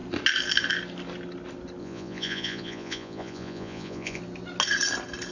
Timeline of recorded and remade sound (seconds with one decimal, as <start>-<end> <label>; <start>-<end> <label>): 0.0-1.8 recorded; 1.8-4.2 remade; 4.2-5.3 recorded